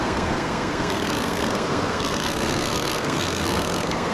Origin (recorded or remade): remade